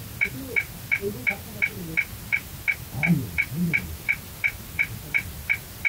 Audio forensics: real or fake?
real